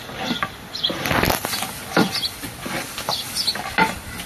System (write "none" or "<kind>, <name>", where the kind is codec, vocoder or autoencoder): none